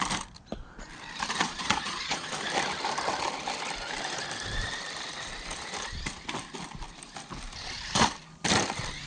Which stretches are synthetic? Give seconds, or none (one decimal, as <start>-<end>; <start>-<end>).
1.4-2.3